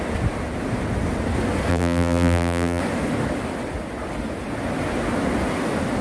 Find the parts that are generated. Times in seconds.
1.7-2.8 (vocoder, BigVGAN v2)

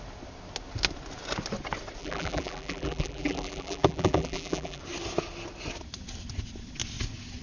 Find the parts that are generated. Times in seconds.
2.0-4.8 (vocoder, BigVGAN v2)

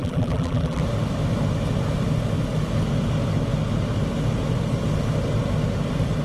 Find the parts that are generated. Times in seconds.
0.0-0.8 (vocoder, BigVGAN v2)